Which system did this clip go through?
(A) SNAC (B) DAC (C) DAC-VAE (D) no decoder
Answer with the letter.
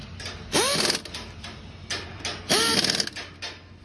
D